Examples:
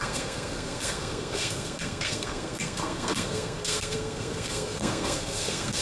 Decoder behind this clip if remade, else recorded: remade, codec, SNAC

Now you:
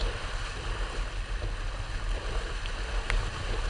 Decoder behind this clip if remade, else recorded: recorded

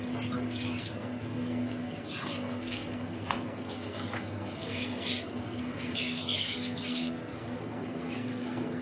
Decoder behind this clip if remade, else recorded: remade, codec, SNAC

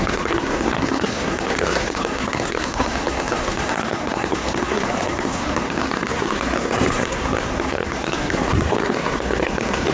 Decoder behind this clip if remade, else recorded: remade, codec, SNAC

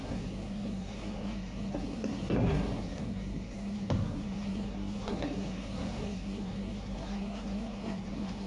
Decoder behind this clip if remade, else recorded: remade, codec, SNAC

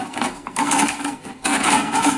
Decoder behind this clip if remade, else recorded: remade, codec, SNAC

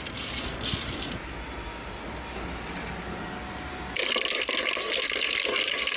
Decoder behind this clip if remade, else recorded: recorded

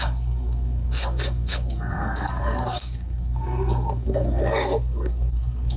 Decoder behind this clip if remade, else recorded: remade, codec, SNAC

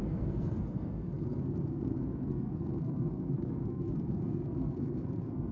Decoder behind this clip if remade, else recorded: remade, codec, SNAC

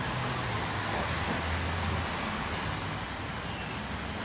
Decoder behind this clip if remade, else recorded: recorded